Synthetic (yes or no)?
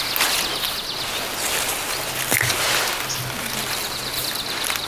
no